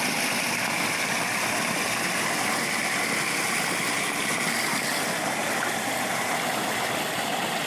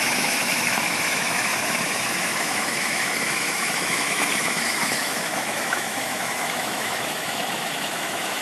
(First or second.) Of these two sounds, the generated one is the second